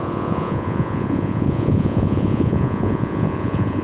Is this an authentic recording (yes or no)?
no